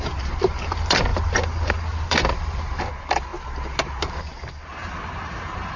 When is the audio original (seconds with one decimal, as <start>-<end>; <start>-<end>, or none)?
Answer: 3.3-5.1